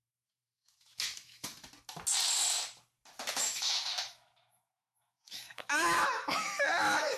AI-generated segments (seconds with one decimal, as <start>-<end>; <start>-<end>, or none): 0.0-1.5; 3.3-7.2